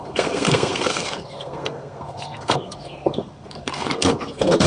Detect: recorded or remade remade